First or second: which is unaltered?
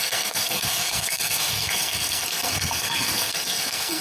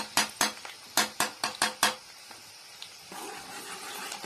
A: second